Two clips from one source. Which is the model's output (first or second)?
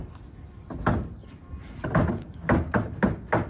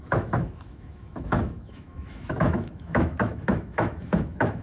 second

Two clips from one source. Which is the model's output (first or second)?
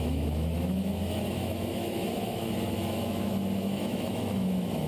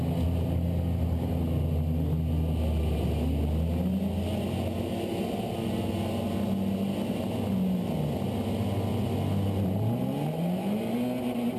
first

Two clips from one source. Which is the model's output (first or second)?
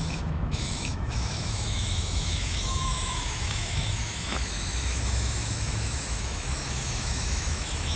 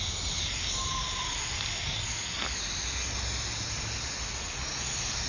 first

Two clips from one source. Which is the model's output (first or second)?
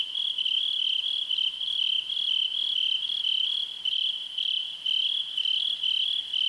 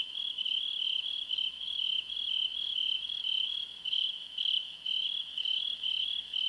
second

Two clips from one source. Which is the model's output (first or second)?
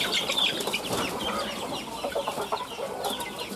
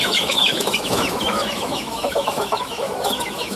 second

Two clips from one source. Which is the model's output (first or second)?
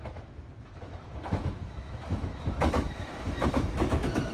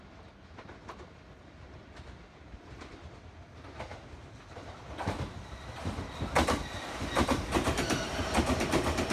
first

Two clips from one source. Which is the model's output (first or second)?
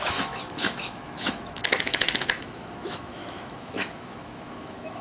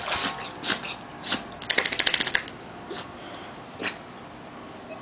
first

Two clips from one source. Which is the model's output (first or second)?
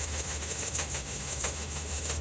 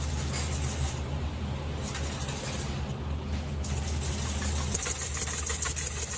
first